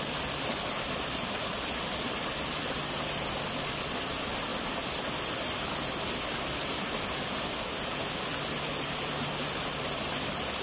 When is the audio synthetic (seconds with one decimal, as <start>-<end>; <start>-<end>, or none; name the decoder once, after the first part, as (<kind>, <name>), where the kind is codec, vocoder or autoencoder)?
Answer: none